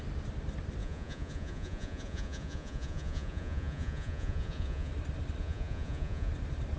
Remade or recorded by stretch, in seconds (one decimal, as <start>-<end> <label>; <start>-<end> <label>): 0.0-0.8 recorded; 0.8-4.9 remade; 4.9-5.4 recorded; 5.4-6.3 remade; 6.3-6.8 recorded